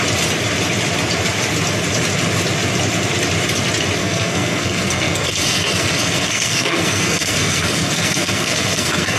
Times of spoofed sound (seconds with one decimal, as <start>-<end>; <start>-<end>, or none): 4.0-9.2